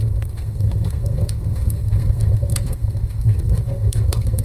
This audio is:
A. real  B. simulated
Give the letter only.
B